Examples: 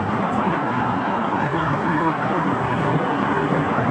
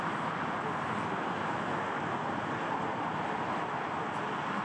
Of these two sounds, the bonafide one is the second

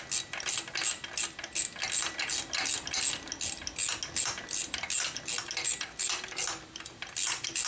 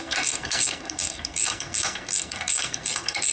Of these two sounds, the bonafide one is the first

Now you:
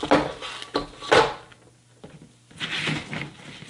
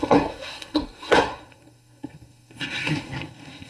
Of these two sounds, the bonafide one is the first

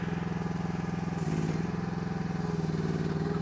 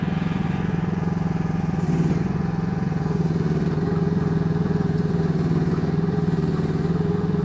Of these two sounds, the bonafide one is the first